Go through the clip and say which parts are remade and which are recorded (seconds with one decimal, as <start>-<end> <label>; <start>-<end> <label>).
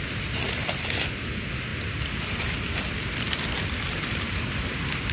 0.0-5.1 recorded